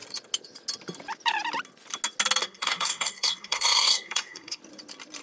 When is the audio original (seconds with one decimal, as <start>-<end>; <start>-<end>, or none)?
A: 0.0-2.4; 4.6-5.2